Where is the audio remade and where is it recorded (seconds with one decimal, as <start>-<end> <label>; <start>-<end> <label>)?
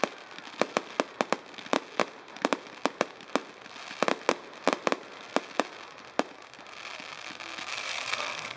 0.0-7.7 recorded; 7.7-8.6 remade